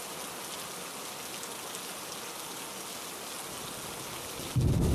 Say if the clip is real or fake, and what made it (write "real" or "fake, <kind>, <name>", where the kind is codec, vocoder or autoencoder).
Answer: real